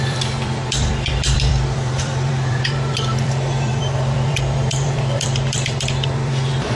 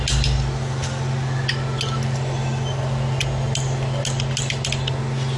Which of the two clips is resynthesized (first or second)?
first